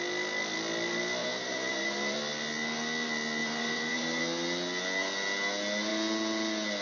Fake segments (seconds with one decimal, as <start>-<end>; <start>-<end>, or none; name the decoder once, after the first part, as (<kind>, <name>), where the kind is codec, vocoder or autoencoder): 1.2-2.2 (vocoder, BigVGAN v2); 3.4-4.2